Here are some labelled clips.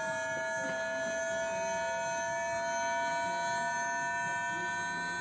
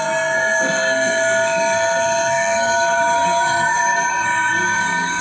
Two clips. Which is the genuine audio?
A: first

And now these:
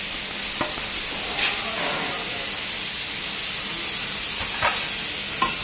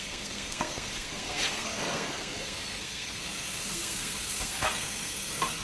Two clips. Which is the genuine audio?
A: first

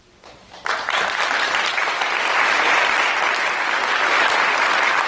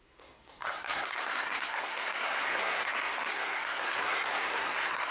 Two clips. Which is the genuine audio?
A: first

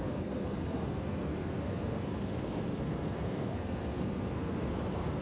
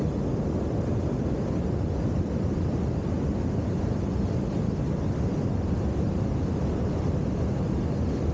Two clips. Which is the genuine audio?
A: second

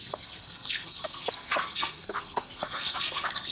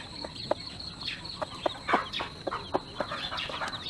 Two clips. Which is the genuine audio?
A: second